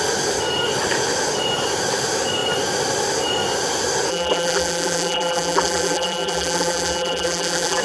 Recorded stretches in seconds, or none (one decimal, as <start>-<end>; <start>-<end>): 0.0-4.1